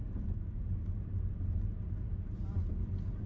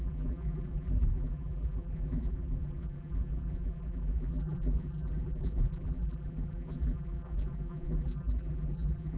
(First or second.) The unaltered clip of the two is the first